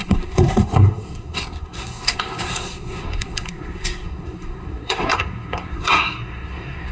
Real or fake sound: fake